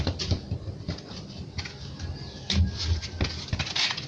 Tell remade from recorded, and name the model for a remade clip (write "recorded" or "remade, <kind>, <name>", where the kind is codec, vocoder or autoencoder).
recorded